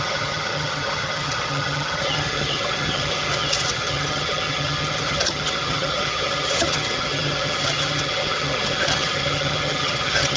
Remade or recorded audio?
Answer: remade